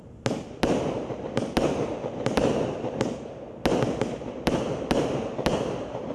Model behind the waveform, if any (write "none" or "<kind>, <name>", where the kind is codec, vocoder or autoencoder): none